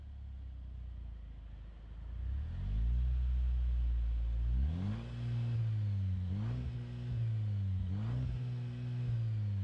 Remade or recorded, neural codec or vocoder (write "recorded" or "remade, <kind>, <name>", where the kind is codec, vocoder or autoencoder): recorded